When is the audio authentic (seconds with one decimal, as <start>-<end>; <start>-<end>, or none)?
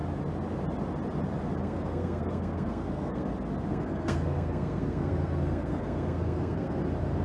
0.0-1.6; 3.3-3.7; 6.8-7.2